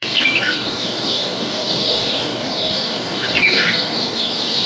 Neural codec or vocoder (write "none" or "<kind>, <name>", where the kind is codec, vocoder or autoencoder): codec, DAC